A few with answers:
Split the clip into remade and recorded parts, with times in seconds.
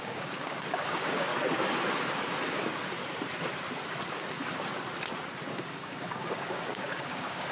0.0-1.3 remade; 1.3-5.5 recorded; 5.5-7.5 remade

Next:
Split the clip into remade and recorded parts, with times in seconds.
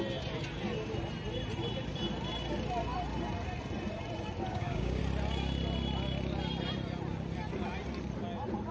0.0-4.5 recorded; 4.5-5.0 remade; 5.0-8.7 recorded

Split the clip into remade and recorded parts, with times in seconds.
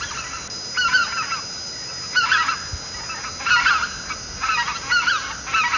0.0-5.8 recorded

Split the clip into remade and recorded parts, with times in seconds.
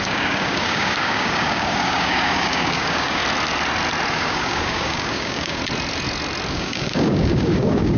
0.0-3.2 remade; 3.2-4.1 recorded; 4.1-5.6 remade; 5.6-6.5 recorded; 6.5-8.0 remade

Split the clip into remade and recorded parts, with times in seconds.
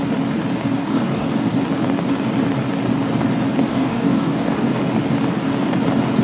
0.0-0.8 recorded; 0.8-1.3 remade; 1.3-3.7 recorded; 3.7-4.8 remade; 4.8-6.2 recorded